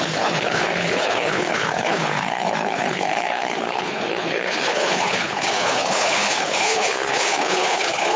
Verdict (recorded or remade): remade